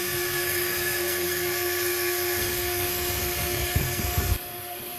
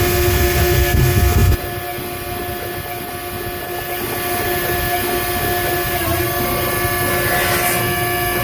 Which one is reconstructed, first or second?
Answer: first